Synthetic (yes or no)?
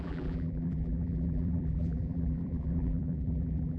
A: yes